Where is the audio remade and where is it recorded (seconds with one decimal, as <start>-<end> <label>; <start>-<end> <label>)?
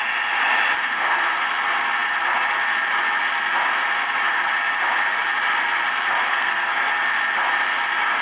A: 0.0-0.8 recorded; 0.8-1.5 remade; 1.5-6.3 recorded; 6.3-6.9 remade; 6.9-8.2 recorded